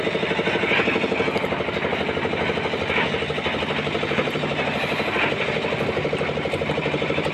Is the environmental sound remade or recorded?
recorded